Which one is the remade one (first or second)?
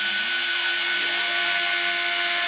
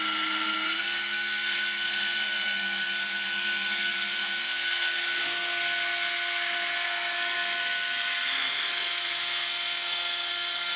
second